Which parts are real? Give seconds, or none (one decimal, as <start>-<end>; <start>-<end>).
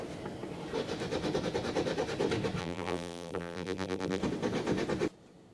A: 0.0-2.6; 4.2-5.5